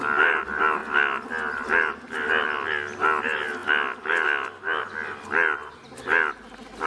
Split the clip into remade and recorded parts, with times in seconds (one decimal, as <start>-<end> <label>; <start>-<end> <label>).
0.0-6.9 recorded